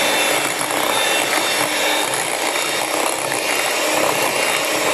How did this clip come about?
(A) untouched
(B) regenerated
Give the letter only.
A